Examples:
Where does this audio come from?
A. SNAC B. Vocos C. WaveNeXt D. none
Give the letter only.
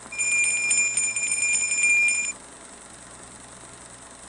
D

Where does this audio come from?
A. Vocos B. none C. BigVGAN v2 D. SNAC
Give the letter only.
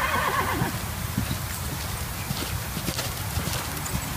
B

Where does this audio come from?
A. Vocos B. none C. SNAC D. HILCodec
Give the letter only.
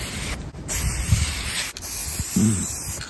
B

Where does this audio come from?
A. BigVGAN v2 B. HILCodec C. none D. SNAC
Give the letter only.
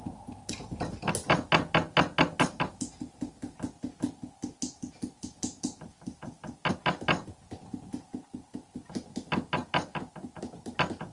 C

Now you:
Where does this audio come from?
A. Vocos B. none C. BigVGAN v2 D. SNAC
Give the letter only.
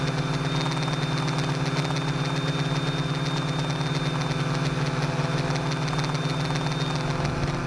B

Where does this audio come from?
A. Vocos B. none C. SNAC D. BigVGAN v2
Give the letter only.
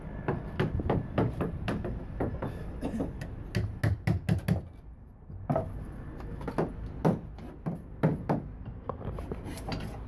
B